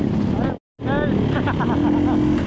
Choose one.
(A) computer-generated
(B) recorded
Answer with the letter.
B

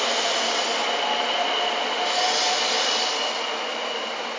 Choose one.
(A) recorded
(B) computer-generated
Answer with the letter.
A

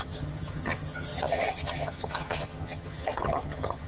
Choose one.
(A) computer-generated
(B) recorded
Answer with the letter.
A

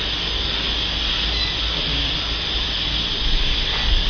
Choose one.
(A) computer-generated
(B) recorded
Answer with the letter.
B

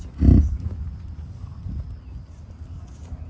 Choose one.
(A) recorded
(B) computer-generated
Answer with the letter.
A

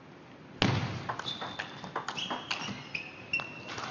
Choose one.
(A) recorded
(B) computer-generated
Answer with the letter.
A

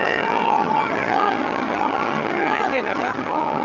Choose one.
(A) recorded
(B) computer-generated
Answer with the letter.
B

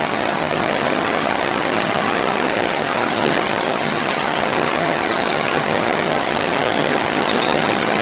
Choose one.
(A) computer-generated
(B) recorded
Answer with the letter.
A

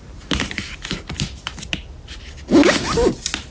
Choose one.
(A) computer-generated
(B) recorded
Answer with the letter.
B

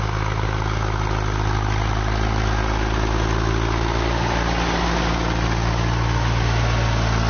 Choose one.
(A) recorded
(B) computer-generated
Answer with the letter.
A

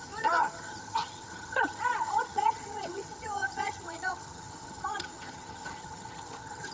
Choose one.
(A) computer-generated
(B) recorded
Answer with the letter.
A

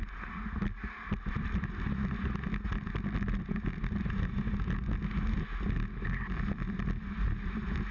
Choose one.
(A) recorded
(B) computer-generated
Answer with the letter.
A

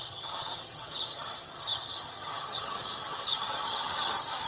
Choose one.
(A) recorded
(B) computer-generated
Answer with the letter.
B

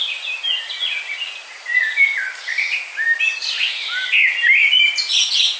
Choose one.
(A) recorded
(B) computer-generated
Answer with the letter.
A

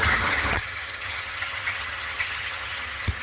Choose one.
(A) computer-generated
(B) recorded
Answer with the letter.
A